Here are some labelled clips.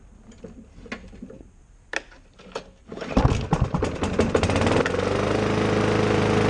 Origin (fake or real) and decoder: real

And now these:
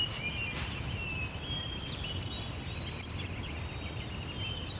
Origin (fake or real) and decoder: real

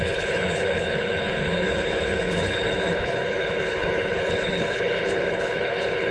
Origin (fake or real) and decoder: fake, codec, HILCodec